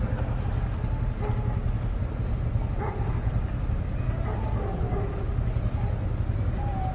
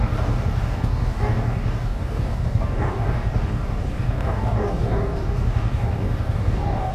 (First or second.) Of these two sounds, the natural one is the first